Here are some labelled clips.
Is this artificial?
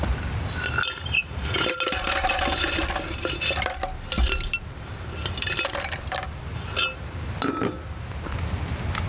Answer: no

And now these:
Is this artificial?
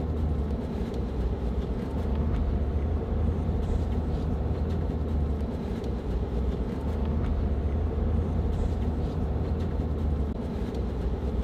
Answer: yes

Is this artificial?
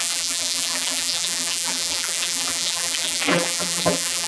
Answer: yes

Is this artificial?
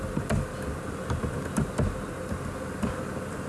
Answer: no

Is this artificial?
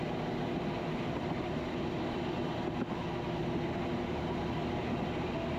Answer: no